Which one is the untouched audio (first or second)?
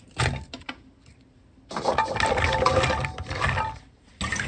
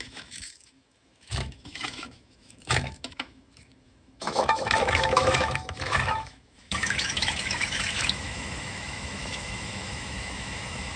first